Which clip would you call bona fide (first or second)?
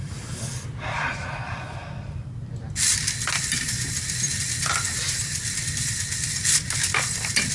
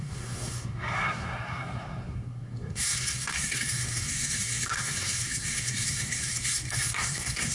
first